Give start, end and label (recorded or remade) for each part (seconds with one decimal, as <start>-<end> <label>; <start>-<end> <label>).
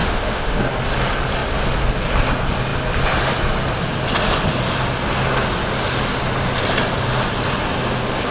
0.0-0.6 remade; 0.6-8.3 recorded